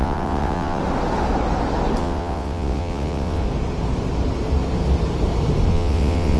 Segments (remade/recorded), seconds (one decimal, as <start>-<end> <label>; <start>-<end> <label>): 0.0-0.8 remade; 0.8-2.0 recorded; 2.0-3.4 remade; 3.4-5.7 recorded; 5.7-6.4 remade